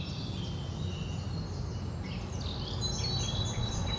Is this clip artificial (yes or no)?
no